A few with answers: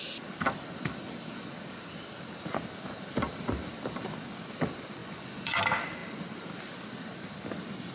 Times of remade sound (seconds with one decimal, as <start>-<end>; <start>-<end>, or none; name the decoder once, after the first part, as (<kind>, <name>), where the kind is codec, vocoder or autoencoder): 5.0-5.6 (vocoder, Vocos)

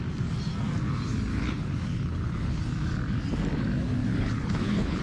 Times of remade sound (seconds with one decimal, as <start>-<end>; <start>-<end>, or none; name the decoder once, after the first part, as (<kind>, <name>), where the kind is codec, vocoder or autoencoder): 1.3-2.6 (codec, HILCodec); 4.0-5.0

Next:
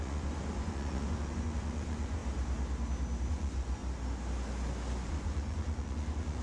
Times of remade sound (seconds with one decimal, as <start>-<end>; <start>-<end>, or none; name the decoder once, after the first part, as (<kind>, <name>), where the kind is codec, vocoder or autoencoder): 0.0-2.2 (vocoder, Vocos); 3.3-3.8; 5.1-6.4

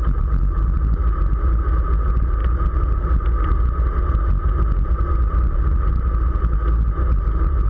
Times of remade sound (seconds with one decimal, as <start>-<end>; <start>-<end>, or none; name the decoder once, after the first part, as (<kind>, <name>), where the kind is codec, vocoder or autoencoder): none